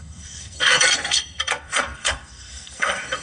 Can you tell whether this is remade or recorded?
remade